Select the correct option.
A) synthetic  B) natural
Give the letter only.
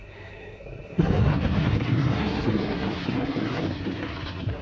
A